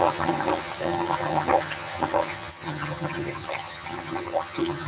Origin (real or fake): fake